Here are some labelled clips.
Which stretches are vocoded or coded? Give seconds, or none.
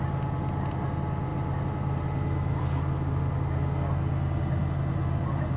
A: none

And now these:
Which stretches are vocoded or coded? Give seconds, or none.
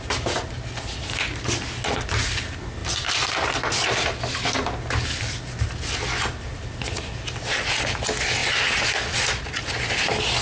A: none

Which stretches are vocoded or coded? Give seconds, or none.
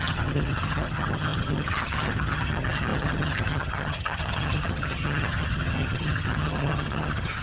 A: 0.0-7.4 (vocoder, HiFi-GAN)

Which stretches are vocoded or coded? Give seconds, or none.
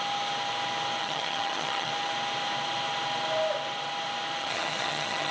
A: 1.0-1.9 (vocoder, HiFi-GAN); 4.4-5.3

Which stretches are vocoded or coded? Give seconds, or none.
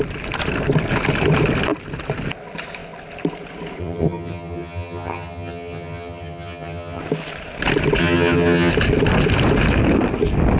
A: 3.8-7.0 (vocoder, HiFi-GAN); 8.0-8.7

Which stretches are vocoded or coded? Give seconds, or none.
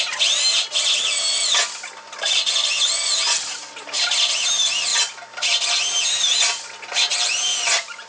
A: none